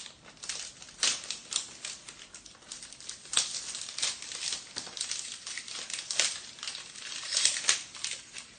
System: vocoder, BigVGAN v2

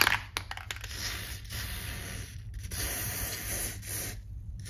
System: none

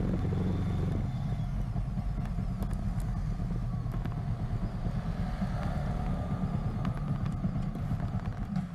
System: none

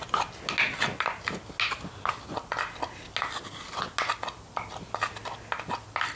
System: none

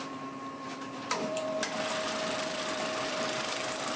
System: vocoder, BigVGAN v2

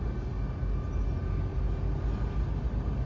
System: none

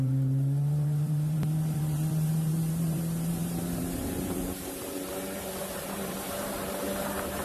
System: vocoder, BigVGAN v2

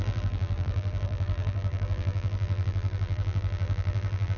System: vocoder, BigVGAN v2